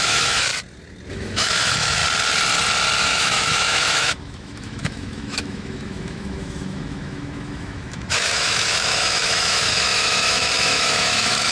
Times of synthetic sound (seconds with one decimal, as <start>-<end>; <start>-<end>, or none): 0.0-0.5; 1.1-2.0; 3.0-11.5